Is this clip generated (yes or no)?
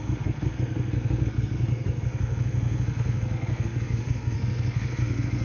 yes